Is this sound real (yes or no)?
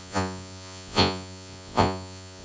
no